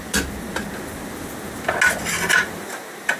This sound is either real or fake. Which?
real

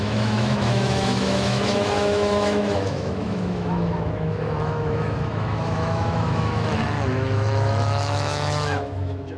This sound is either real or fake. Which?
fake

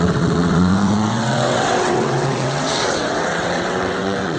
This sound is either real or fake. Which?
fake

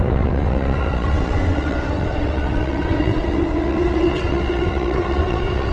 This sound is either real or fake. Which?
fake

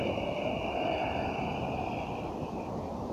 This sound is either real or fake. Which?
real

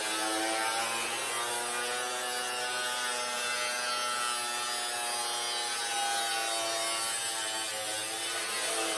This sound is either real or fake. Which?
real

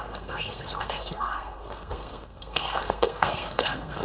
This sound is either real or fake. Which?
fake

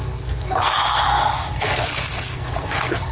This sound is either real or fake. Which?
fake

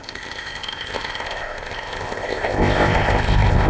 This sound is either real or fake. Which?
fake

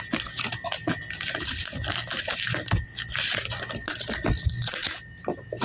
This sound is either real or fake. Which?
real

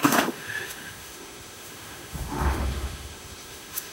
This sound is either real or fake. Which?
fake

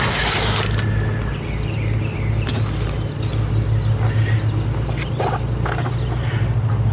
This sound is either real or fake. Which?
real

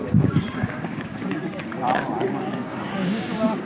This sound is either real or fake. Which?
fake